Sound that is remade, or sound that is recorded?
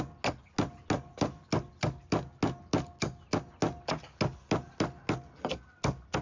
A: recorded